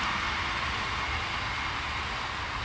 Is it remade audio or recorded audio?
recorded